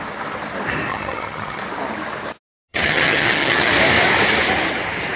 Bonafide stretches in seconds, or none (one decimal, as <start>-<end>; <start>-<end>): 0.0-0.9; 1.6-2.7; 3.7-5.2